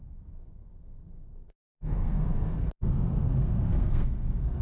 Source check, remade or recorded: remade